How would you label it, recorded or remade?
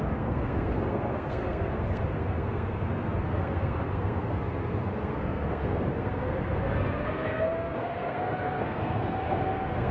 remade